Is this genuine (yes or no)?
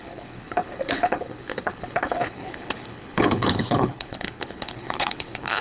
no